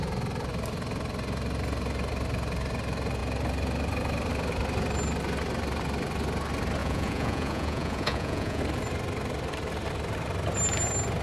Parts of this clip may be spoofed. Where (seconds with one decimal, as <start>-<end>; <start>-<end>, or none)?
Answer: 6.8-8.6